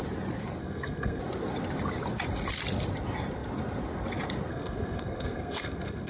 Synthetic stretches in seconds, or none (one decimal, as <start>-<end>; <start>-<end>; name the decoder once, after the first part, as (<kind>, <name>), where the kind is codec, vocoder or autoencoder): 0.6-1.2 (codec, SNAC); 4.5-6.1